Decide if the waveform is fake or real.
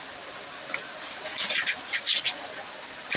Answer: real